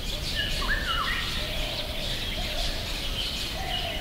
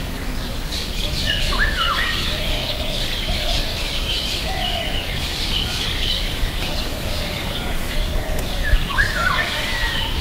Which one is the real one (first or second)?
first